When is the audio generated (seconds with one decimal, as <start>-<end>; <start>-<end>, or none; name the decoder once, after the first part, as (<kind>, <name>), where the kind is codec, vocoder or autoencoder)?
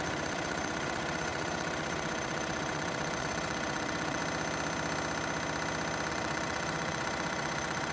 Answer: 0.0-4.2 (vocoder, WaveNeXt); 6.1-7.9